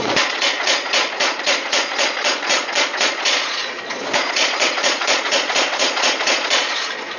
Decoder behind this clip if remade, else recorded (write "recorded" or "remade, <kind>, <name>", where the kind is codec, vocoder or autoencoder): remade, vocoder, Vocos